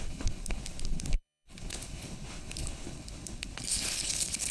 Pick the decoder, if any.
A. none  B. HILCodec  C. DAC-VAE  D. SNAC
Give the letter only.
B